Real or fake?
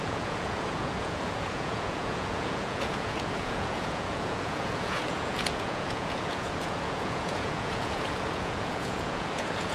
fake